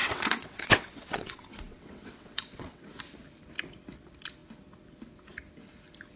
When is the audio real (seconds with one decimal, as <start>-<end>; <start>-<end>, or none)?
3.0-6.2